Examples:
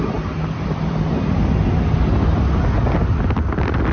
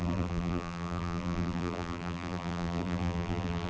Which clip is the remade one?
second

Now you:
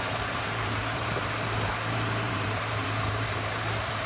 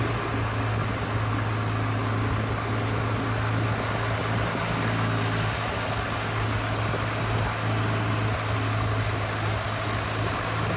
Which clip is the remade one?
first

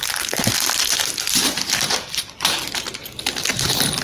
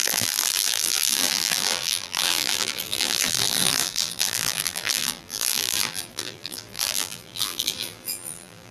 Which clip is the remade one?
second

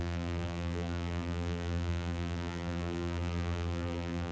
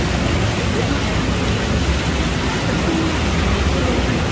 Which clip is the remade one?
first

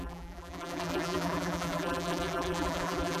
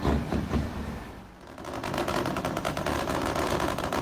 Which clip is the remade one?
first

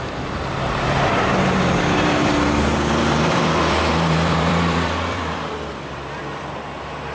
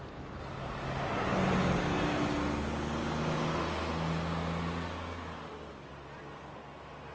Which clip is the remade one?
first